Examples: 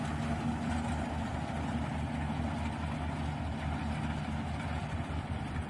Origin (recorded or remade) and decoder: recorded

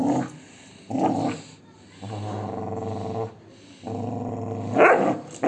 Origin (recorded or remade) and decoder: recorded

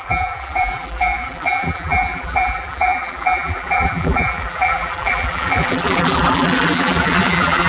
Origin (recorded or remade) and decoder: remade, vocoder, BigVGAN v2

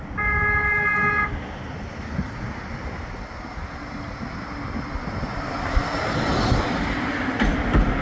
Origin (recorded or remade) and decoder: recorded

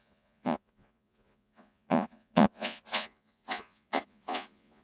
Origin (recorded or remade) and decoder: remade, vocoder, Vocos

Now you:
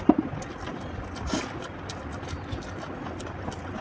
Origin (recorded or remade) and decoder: recorded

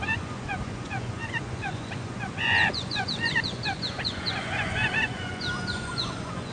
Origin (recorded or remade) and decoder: remade, vocoder, Vocos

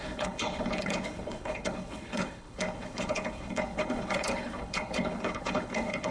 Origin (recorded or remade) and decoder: remade, codec, HILCodec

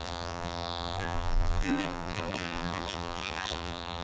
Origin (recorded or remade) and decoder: remade, vocoder, BigVGAN v2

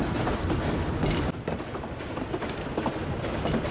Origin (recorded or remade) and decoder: recorded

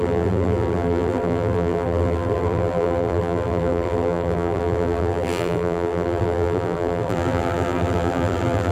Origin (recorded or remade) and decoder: remade, vocoder, BigVGAN v2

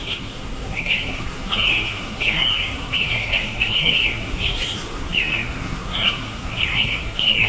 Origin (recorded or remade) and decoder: remade, codec, SNAC